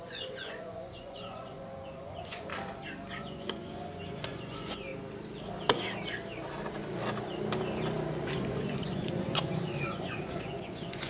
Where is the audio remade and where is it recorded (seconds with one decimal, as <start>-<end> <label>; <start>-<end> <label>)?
0.0-2.5 remade; 2.5-3.2 recorded; 3.2-4.9 remade; 4.9-8.1 recorded; 8.1-11.1 remade